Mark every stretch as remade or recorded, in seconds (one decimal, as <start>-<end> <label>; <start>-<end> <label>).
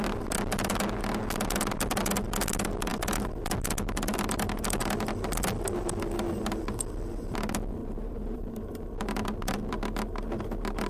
0.0-7.8 recorded; 7.8-8.5 remade; 8.5-10.9 recorded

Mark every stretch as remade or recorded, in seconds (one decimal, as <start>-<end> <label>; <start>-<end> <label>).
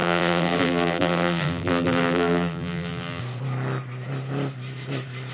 0.0-3.2 remade; 3.2-5.3 recorded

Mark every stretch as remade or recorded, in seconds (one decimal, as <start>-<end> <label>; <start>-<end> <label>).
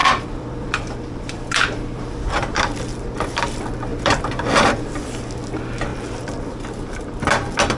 0.0-2.8 remade; 2.8-3.9 recorded; 3.9-4.9 remade; 4.9-5.9 recorded; 5.9-6.4 remade; 6.4-7.8 recorded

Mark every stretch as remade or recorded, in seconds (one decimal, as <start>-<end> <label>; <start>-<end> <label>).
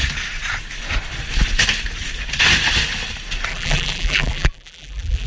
0.0-3.5 recorded; 3.5-5.3 remade